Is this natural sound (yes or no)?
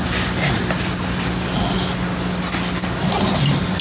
yes